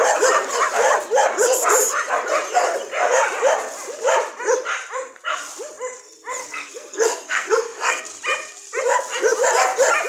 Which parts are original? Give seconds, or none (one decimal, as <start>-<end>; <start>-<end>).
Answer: 0.0-6.4; 8.0-10.1